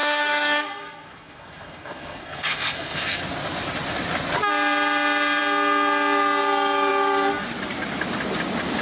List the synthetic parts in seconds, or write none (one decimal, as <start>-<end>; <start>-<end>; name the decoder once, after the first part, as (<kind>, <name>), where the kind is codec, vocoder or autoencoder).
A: 0.0-3.2 (codec, SNAC)

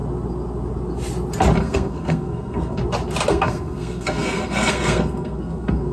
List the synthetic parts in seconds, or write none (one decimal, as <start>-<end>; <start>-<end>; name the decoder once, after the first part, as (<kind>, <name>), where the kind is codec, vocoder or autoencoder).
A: 1.6-2.8 (codec, SNAC); 3.3-5.9

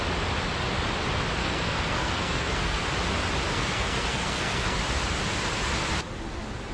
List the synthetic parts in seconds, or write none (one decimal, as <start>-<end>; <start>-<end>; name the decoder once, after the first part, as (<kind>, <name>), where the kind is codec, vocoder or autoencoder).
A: 1.4-2.8 (codec, SNAC); 3.5-4.8

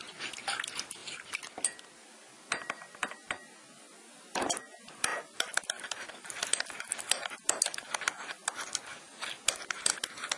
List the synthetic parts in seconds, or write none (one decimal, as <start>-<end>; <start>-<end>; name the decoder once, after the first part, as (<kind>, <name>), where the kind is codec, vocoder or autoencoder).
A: none

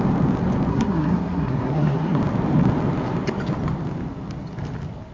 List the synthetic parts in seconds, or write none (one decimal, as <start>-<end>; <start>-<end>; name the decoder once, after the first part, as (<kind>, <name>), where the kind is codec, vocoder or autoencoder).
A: 0.7-2.2 (codec, SNAC)

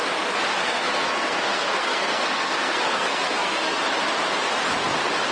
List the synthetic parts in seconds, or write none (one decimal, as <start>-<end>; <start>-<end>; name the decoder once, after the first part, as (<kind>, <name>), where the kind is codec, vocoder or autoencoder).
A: 0.6-3.8 (codec, SNAC)